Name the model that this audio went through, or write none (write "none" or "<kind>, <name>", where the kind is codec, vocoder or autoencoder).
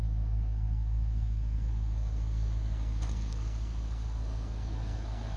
codec, SNAC